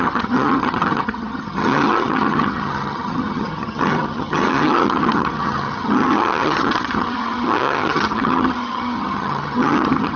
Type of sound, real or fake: fake